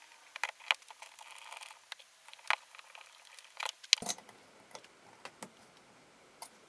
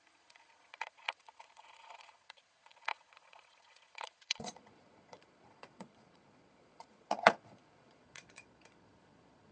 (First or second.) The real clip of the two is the first